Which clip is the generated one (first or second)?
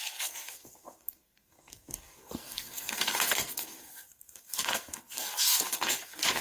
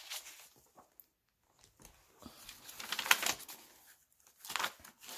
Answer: first